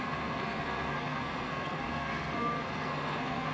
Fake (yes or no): yes